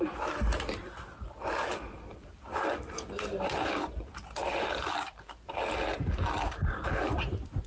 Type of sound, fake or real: fake